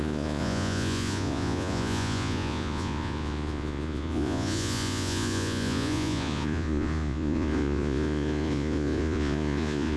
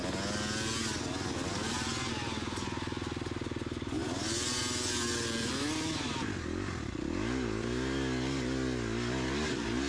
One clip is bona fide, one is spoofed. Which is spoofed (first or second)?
first